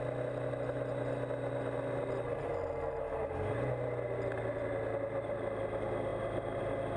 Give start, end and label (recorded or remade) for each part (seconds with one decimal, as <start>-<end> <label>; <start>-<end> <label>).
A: 0.0-7.0 recorded